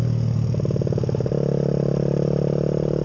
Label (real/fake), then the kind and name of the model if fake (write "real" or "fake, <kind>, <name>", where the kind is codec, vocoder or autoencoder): real